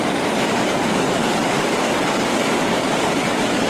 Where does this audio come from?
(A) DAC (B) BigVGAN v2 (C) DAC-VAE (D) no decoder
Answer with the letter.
A